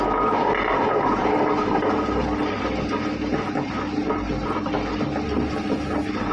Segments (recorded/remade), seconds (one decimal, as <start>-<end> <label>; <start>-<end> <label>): 0.0-6.3 recorded